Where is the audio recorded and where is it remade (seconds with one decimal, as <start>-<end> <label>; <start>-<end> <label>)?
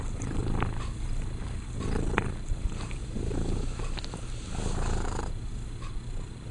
0.0-0.4 remade; 0.4-2.1 recorded; 2.1-3.0 remade; 3.0-5.9 recorded; 5.9-6.5 remade